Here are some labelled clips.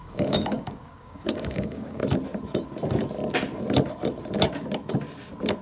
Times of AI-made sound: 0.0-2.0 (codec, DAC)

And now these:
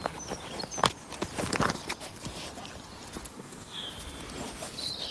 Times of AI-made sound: 3.3-3.9 (codec, DAC)

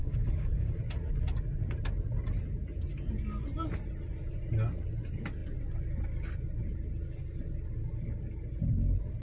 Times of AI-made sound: 0.0-0.7 (codec, DAC)

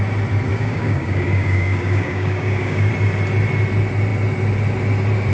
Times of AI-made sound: 0.5-2.9 (codec, DAC)

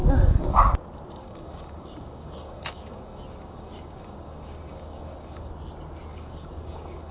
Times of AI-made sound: 0.0-0.6 (codec, DAC); 1.2-5.5; 6.1-7.1